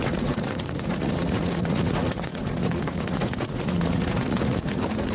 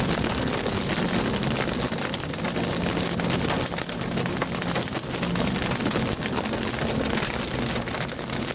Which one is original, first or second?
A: second